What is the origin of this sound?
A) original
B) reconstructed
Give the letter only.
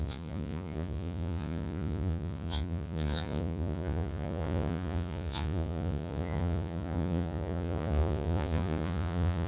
B